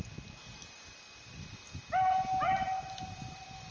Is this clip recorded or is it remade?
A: recorded